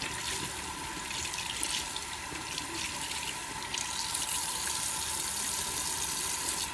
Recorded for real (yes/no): yes